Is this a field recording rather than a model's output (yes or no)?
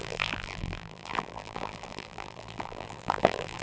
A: no